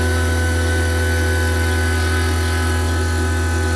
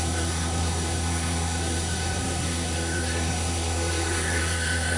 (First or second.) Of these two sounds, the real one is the first